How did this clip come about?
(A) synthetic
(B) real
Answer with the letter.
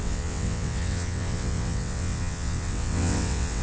A